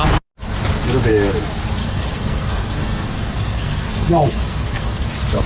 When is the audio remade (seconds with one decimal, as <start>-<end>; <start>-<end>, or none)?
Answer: 1.8-5.1